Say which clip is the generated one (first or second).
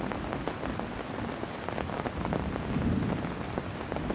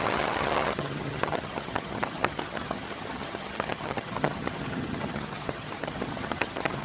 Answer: second